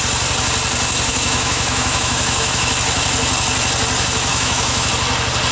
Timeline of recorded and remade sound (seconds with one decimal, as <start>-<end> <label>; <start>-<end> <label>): 0.0-1.1 recorded; 1.1-2.7 remade; 2.7-4.3 recorded; 4.3-4.9 remade; 4.9-5.5 recorded

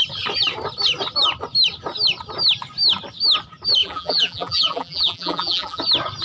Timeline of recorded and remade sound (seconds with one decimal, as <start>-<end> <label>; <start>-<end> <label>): 0.0-3.8 recorded; 3.8-5.8 remade; 5.8-6.2 recorded

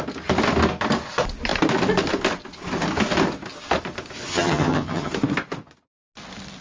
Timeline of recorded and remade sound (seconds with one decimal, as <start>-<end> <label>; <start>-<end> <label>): 0.0-4.3 recorded; 4.3-5.1 remade; 5.1-6.6 recorded

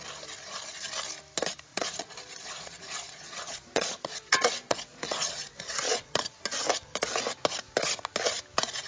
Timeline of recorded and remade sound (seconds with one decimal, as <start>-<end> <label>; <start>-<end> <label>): 0.0-1.7 recorded; 1.7-6.4 remade; 6.4-8.9 recorded

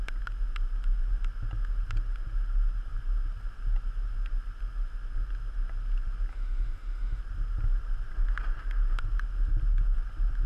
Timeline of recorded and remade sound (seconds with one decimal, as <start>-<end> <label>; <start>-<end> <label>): 0.0-6.3 recorded; 6.3-7.2 remade; 7.2-10.5 recorded